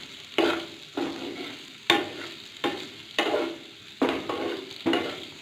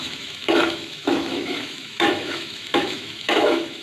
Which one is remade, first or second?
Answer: second